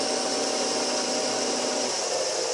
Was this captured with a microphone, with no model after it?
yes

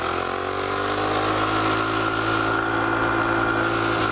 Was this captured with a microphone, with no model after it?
yes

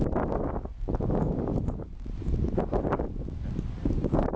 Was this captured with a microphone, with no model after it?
yes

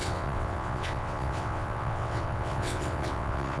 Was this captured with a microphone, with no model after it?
no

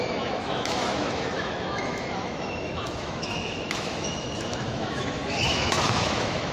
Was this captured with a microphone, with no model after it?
no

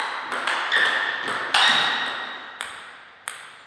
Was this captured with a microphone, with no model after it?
yes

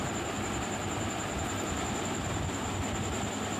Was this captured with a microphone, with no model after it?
yes